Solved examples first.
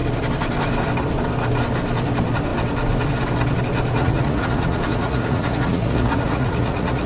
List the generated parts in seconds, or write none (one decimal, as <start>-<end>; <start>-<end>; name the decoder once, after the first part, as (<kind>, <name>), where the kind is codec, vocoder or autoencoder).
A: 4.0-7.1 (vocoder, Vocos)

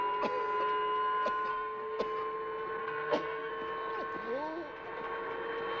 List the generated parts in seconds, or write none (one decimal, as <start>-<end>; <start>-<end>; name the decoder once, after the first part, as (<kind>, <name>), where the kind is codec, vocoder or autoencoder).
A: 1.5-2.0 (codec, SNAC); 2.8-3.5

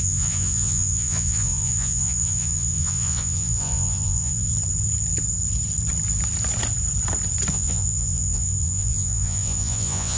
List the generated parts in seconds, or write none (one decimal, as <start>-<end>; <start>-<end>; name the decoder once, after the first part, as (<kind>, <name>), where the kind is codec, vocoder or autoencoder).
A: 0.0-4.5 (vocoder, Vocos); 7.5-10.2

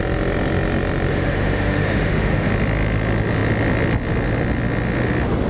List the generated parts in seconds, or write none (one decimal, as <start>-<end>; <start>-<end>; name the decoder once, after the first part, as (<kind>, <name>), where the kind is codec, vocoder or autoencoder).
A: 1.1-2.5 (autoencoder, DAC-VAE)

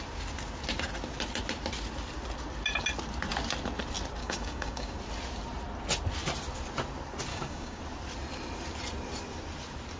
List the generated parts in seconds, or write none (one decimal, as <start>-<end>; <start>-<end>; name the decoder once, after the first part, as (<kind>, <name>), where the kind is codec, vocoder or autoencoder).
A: 4.2-5.0 (codec, DAC); 7.3-7.8

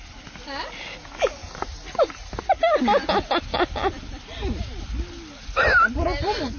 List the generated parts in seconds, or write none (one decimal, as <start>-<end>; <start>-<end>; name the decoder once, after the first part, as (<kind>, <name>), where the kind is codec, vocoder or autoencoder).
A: 1.4-2.4 (vocoder, BigVGAN v2)